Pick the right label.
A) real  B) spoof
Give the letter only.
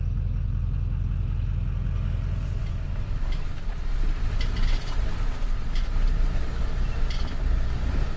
A